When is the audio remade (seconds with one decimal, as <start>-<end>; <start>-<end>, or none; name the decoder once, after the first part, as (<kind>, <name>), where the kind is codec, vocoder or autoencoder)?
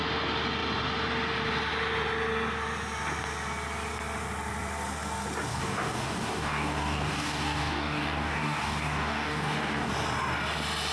5.5-9.9 (codec, DAC)